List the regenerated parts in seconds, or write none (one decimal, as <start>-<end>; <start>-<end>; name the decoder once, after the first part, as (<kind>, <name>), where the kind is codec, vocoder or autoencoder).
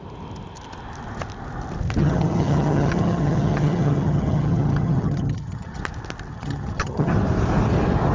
2.0-5.8 (vocoder, HiFi-GAN); 6.3-7.1